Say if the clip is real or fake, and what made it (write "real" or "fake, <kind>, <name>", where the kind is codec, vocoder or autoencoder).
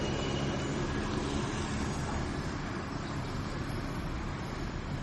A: real